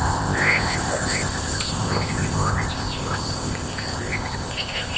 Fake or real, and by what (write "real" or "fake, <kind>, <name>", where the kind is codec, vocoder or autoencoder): fake, codec, ZipCodec